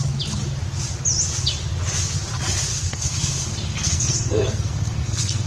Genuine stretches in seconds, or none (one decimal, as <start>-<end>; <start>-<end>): 0.0-2.7